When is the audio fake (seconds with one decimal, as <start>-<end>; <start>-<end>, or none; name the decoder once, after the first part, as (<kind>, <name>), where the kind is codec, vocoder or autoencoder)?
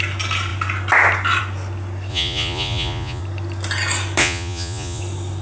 2.1-3.2 (vocoder, Vocos); 4.2-5.0